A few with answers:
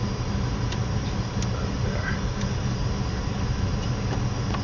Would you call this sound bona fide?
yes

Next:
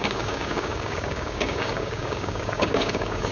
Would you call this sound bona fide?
no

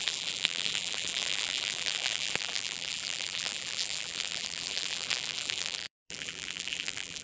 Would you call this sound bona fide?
no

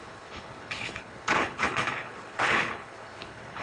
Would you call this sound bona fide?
no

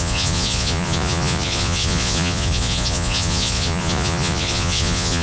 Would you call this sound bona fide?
no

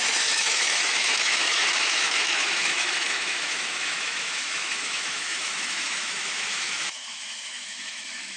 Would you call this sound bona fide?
no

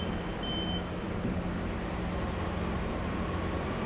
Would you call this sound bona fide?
yes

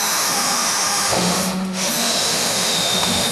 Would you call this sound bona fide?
no